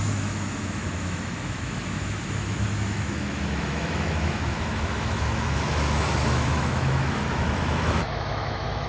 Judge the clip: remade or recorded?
remade